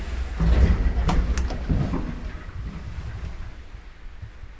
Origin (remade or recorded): recorded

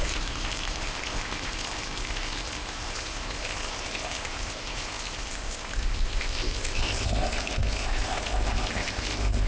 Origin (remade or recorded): remade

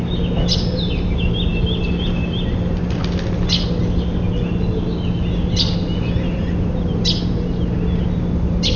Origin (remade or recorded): recorded